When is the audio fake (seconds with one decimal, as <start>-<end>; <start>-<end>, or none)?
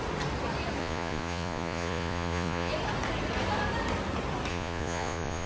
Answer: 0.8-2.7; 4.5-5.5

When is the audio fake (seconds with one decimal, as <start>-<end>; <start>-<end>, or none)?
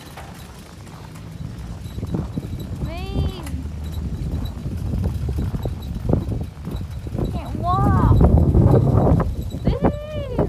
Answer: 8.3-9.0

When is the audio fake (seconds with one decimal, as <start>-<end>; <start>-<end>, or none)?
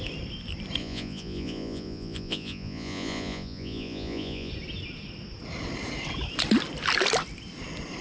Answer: 0.8-4.5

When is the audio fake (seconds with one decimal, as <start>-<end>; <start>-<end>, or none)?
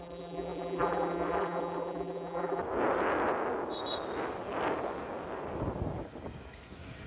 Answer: 0.0-2.6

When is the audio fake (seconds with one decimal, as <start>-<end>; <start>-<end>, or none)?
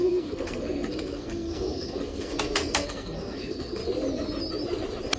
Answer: 0.0-3.8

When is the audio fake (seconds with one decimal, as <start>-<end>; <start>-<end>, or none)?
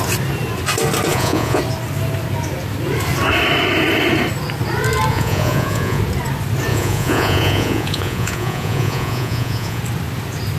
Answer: 1.1-1.6; 5.1-6.0; 6.7-9.8